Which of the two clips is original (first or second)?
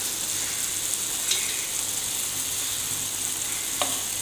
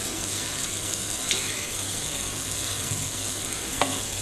first